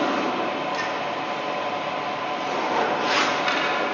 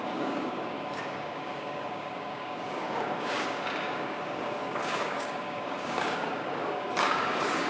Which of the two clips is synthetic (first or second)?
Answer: second